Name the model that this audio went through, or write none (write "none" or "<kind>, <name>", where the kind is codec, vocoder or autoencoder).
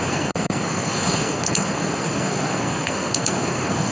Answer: codec, SNAC